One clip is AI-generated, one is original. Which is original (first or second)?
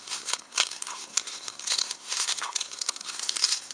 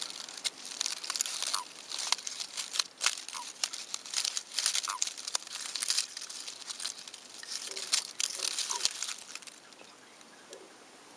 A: second